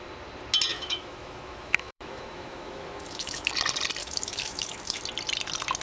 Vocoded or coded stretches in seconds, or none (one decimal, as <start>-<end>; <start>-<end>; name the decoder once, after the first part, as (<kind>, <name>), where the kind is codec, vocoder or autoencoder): 0.7-3.5 (autoencoder, DAC-VAE); 4.0-5.0